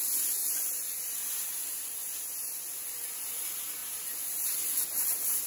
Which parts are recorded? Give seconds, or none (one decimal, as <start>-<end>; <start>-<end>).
0.0-5.5

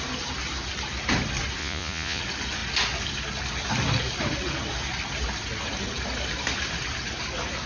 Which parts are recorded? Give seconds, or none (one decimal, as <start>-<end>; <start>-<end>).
0.0-1.6; 2.2-7.7

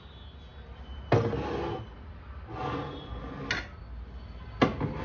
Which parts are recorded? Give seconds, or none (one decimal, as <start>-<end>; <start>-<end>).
0.0-5.0

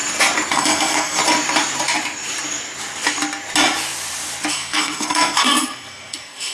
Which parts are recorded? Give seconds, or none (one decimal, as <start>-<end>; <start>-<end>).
0.0-0.5; 1.2-4.5

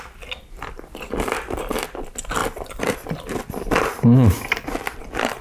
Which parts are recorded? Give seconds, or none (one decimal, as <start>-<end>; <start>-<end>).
0.0-2.4; 5.0-5.4

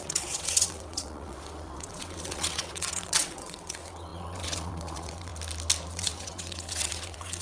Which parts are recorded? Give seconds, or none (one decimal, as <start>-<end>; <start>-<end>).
5.3-5.9

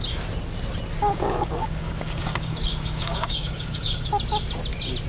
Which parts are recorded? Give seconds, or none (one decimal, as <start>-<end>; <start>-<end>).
0.0-1.0; 4.1-5.1

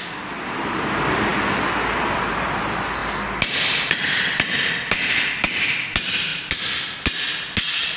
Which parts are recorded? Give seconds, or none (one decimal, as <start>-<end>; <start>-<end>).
0.0-8.0